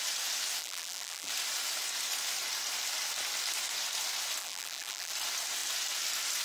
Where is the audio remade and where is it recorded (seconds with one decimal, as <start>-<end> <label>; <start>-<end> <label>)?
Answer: 0.0-0.6 recorded; 0.6-1.3 remade; 1.3-4.4 recorded; 4.4-5.1 remade; 5.1-6.4 recorded